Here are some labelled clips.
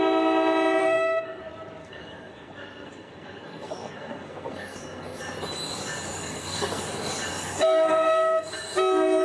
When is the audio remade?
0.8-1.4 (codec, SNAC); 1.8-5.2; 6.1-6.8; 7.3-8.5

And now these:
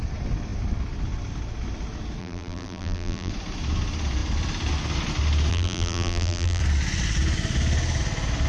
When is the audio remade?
2.2-3.3 (vocoder, BigVGAN v2); 5.5-6.6

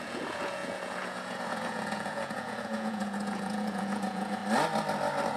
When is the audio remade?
0.0-4.4 (vocoder, Vocos)

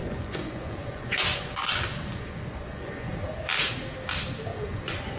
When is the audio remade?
0.0-3.1 (vocoder, Vocos); 4.5-5.2

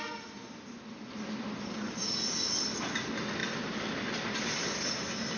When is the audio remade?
none